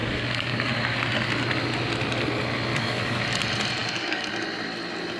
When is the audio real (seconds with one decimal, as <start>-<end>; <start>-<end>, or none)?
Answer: 0.7-2.7; 3.2-3.8; 4.3-5.2